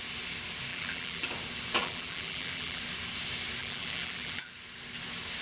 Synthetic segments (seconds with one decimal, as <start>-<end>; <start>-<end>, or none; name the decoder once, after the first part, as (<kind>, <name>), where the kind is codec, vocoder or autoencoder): 0.7-1.3 (vocoder, BigVGAN v2); 1.8-2.8; 3.6-4.5